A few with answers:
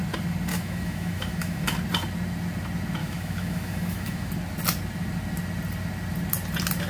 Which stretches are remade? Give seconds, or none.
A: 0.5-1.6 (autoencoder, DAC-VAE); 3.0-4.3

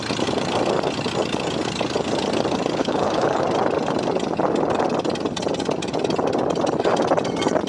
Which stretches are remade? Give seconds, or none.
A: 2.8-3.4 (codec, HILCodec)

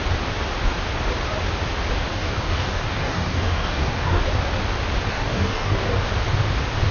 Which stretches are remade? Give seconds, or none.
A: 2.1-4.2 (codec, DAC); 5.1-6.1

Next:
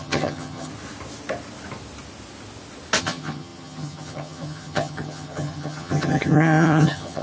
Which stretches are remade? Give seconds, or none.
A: 0.0-0.7 (vocoder, HiFi-GAN); 3.0-7.2

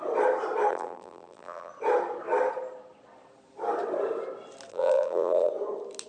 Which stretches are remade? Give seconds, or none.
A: 0.7-1.7 (vocoder, BigVGAN v2); 4.7-5.5